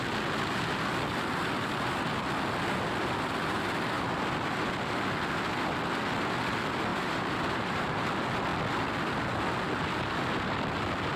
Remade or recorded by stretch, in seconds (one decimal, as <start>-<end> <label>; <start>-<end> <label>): 0.0-6.9 recorded; 6.9-8.0 remade; 8.0-11.2 recorded